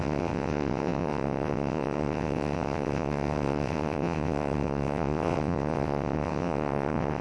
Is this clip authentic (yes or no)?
no